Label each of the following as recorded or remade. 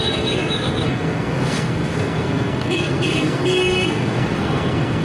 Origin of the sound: remade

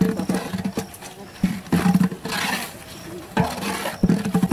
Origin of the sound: recorded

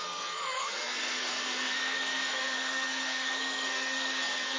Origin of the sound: remade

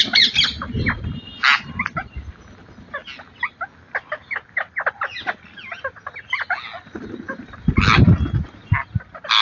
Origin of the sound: recorded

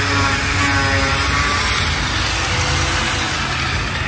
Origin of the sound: recorded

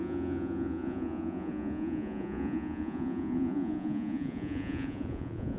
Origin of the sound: remade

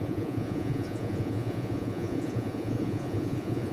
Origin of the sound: remade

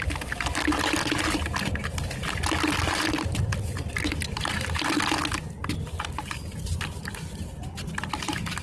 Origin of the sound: recorded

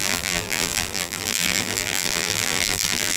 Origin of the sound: remade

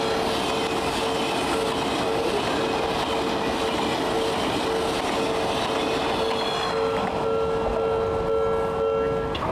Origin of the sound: recorded